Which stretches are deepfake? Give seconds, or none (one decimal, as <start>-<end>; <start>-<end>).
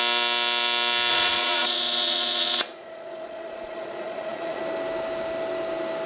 1.1-4.6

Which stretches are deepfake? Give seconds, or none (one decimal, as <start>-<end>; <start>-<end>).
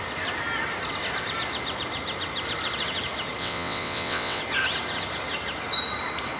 3.4-4.4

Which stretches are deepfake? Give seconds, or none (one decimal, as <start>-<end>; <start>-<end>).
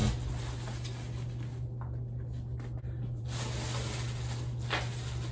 none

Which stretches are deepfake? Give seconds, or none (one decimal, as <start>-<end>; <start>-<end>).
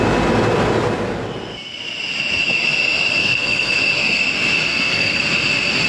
3.2-3.8; 4.7-5.2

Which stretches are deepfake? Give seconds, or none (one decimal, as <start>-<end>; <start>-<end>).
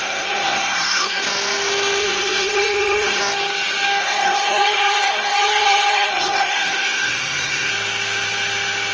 0.0-1.2; 2.0-3.2; 4.0-7.7